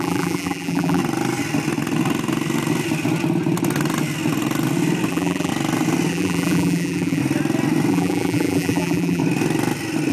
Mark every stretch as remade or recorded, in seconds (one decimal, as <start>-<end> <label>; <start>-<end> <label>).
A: 0.0-1.0 remade; 1.0-5.1 recorded; 5.1-5.5 remade; 5.5-6.1 recorded; 6.1-7.2 remade; 7.2-7.9 recorded; 7.9-9.2 remade; 9.2-10.1 recorded